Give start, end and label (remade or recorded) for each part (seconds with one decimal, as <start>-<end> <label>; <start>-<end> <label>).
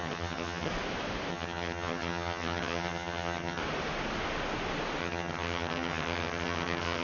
0.0-0.7 remade; 0.7-1.3 recorded; 1.3-3.6 remade; 3.6-5.0 recorded; 5.0-7.0 remade